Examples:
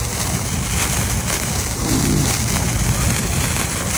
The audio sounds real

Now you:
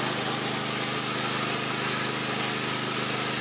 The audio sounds real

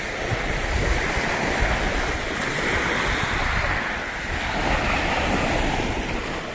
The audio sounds real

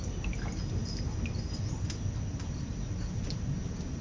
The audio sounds real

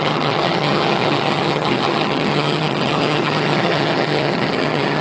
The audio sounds fake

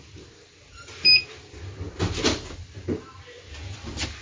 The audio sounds real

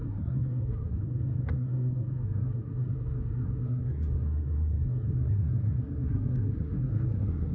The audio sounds fake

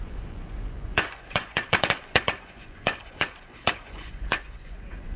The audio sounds fake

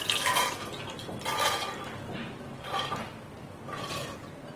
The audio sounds real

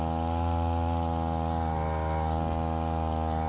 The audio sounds real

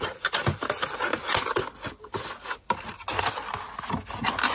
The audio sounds real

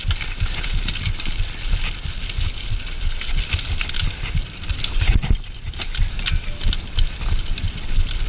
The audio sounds real